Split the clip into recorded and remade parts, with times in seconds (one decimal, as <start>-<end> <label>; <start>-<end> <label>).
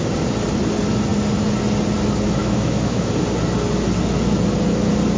0.0-2.4 recorded; 2.4-3.1 remade; 3.1-5.2 recorded